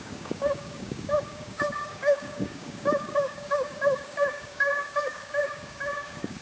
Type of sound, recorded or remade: remade